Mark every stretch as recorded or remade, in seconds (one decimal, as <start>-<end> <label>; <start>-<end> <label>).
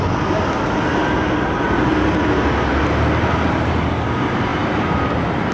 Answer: 0.0-4.5 recorded; 4.5-5.5 remade